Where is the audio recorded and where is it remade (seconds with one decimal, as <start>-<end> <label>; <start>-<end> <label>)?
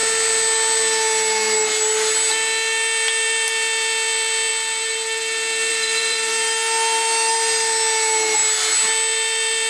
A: 0.0-5.7 recorded; 5.7-6.3 remade; 6.3-9.7 recorded